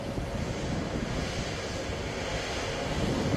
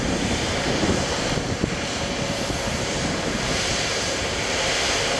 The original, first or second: first